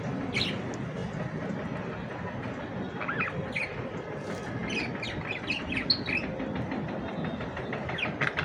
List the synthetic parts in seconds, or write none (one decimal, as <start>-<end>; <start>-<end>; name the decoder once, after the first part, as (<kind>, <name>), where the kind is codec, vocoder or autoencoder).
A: none